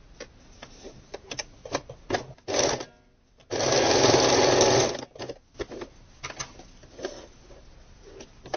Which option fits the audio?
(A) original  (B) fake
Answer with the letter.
A